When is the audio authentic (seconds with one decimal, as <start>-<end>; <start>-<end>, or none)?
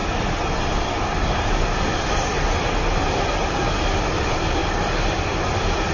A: 0.0-5.9